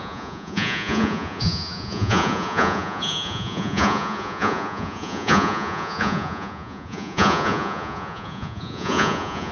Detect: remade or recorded remade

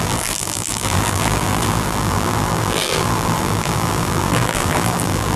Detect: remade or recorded remade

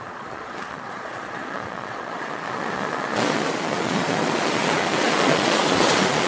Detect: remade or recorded remade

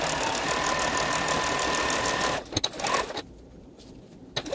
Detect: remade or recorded recorded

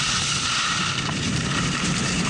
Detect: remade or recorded remade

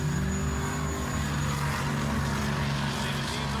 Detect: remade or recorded recorded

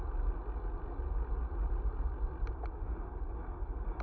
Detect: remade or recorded recorded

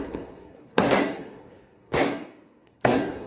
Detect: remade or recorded remade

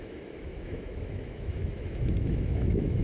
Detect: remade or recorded remade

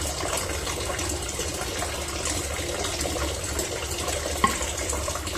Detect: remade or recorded recorded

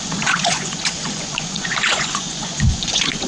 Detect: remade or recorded remade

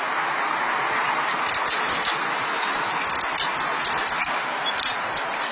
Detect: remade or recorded recorded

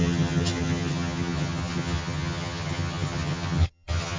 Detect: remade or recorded remade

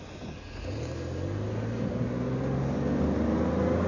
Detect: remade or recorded recorded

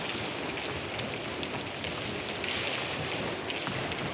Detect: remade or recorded recorded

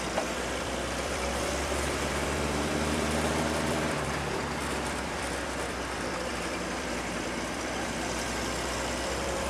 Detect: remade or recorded remade